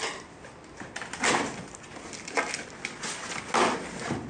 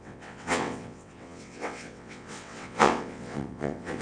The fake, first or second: second